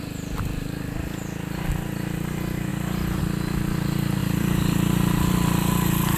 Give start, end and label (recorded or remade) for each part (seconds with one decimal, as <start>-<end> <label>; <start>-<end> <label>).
0.0-2.7 recorded; 2.7-3.2 remade; 3.2-4.2 recorded; 4.2-6.2 remade